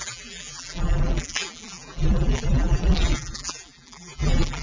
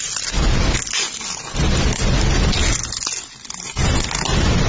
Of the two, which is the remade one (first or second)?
first